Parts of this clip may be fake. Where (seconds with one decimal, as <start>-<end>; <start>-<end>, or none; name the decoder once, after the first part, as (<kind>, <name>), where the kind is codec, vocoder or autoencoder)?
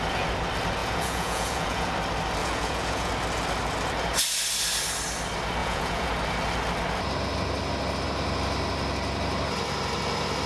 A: 0.8-1.9 (vocoder, Vocos); 2.4-3.1; 5.6-6.1